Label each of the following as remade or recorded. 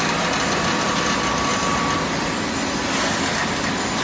recorded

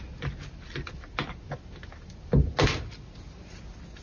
recorded